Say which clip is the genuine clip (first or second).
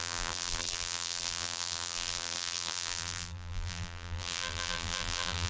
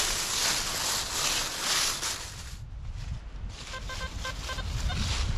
second